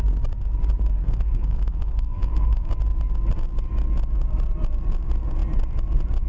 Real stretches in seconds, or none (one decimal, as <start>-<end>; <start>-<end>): 0.0-1.0; 2.7-6.3